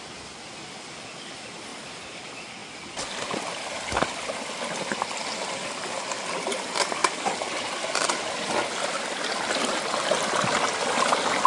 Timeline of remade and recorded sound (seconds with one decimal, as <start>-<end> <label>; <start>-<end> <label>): 0.0-1.7 recorded; 1.7-2.2 remade; 2.2-7.0 recorded; 7.0-8.2 remade; 8.2-11.5 recorded